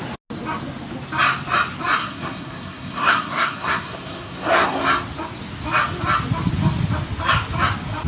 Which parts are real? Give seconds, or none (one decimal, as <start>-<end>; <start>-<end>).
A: 0.0-2.0; 4.8-8.1